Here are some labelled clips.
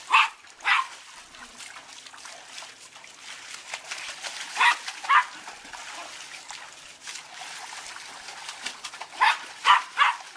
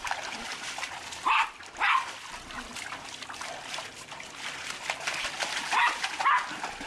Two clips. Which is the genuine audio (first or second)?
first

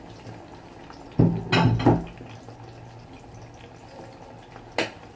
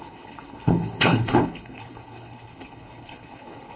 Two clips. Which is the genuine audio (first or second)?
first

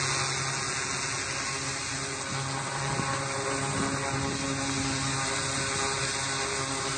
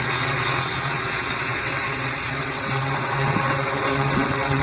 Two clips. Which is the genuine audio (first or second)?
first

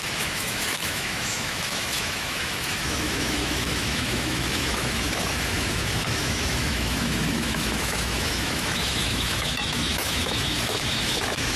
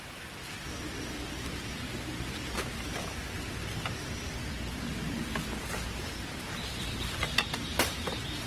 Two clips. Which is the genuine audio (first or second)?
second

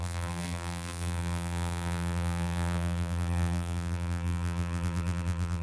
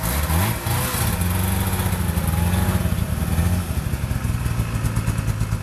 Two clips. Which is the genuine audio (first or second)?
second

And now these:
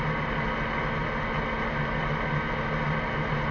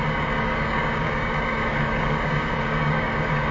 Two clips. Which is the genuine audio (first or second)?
first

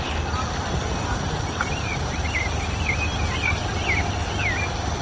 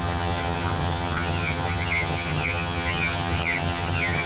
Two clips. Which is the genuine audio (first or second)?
first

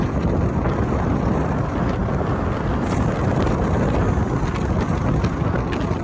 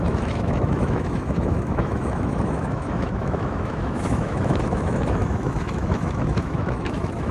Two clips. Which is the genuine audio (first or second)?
first